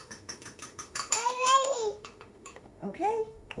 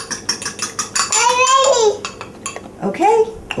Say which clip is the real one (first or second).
second